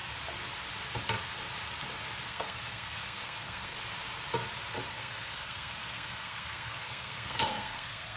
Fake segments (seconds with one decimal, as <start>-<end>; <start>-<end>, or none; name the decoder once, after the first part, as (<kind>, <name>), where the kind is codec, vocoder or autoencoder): 2.3-3.7 (codec, SNAC); 4.9-8.2